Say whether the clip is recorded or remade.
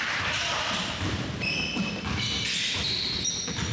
recorded